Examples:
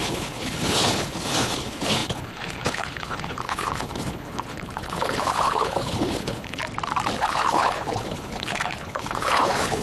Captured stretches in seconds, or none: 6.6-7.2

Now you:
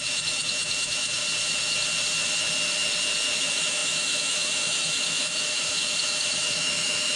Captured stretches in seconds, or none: 1.2-3.4

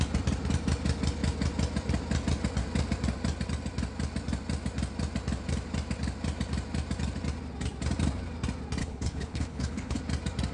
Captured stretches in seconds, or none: 0.0-8.8; 10.0-10.5